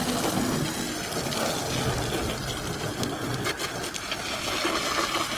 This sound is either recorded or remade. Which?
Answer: recorded